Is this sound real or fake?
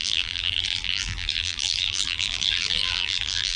fake